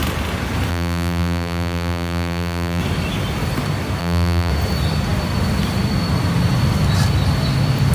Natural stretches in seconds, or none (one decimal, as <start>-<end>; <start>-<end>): 0.0-0.7; 2.8-4.0; 4.5-7.9